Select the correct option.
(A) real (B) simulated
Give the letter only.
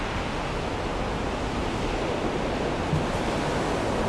A